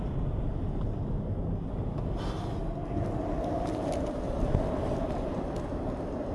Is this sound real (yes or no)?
yes